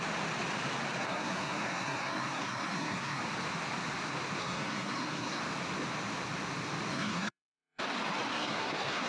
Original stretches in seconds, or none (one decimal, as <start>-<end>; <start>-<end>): 0.0-1.0; 3.2-4.4; 5.4-6.9; 7.8-8.3